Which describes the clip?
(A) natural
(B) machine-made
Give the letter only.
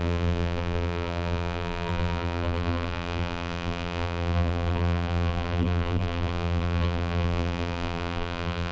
B